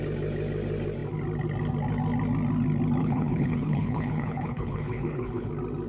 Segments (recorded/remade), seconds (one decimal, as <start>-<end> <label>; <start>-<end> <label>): 0.0-3.0 recorded; 3.0-5.5 remade; 5.5-5.9 recorded